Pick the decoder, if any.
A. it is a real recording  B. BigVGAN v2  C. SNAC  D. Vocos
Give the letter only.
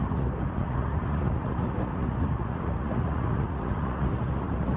D